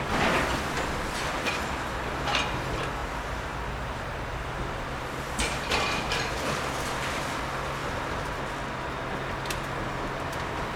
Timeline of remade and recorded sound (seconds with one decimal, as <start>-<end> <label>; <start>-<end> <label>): 0.0-3.0 recorded; 3.0-6.3 remade; 6.3-7.8 recorded; 7.8-8.5 remade; 8.5-10.8 recorded